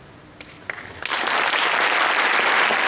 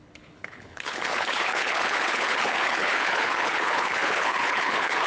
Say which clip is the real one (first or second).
first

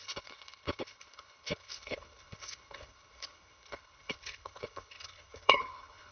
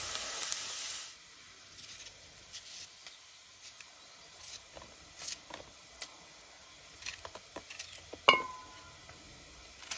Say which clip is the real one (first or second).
second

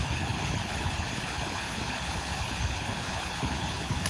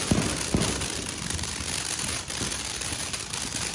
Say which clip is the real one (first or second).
second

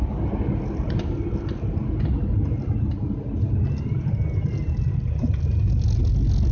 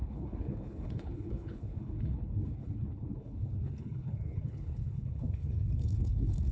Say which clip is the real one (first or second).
first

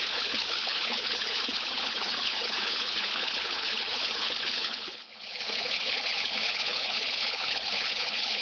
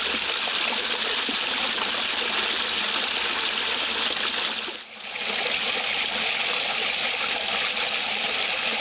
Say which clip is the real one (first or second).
second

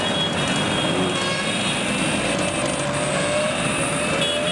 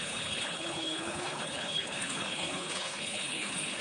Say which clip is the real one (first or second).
first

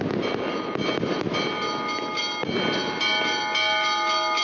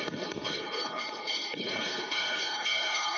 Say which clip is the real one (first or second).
first